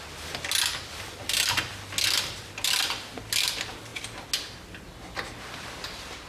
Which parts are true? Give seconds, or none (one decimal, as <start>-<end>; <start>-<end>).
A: 0.0-6.3

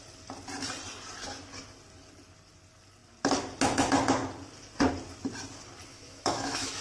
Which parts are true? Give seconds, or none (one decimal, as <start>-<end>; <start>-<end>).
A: 0.0-5.9

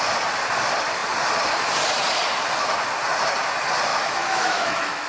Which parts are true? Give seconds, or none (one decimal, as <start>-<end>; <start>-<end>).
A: 0.0-3.9

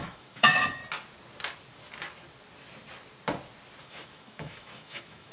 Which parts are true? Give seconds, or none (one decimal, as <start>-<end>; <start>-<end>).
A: 0.8-3.8

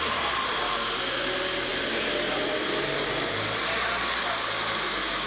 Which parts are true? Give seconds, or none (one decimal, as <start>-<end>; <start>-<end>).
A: 0.0-5.3

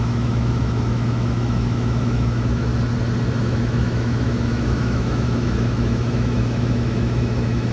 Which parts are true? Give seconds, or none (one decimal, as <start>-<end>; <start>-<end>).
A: 2.7-3.4

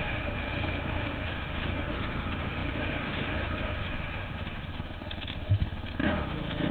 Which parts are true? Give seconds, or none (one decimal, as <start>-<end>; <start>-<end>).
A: none